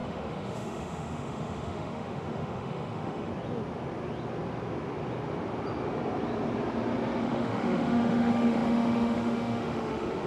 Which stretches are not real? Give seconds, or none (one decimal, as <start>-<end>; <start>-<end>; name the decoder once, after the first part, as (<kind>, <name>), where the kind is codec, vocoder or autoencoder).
0.0-3.3 (autoencoder, DAC-VAE); 7.2-10.3